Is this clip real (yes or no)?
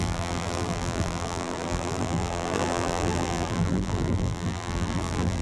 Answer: no